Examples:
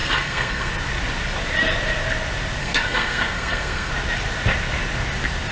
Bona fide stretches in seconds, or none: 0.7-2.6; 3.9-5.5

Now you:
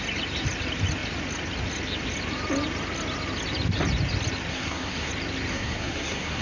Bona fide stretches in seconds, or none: 0.0-4.5; 5.1-5.5

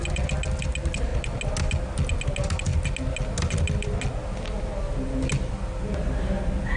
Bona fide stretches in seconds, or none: 0.0-6.8

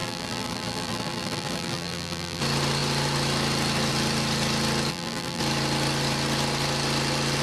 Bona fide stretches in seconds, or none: 2.4-4.9; 5.4-7.4